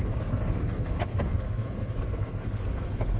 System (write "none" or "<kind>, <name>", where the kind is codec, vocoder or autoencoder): codec, SNAC